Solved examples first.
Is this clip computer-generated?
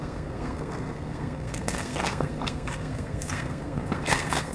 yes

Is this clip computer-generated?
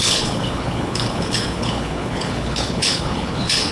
yes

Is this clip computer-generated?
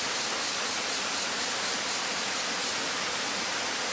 no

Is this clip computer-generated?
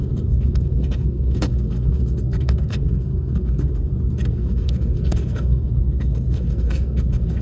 yes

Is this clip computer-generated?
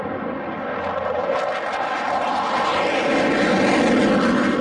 no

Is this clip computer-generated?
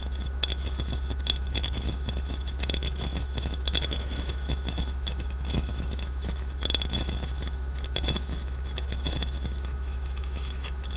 yes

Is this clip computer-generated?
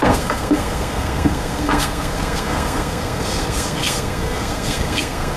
yes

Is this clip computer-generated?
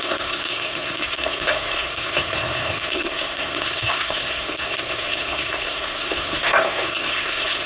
yes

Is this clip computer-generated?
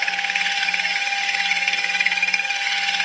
yes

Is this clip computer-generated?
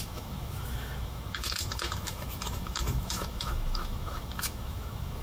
yes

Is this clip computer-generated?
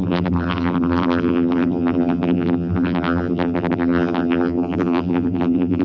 yes